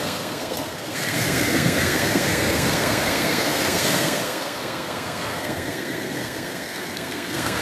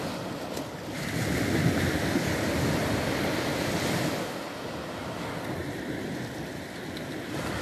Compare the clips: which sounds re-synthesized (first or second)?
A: first